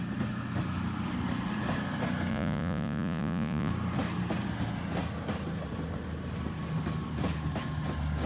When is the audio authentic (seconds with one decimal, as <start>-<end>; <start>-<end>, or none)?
0.0-2.3; 3.7-8.3